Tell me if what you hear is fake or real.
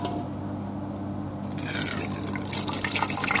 real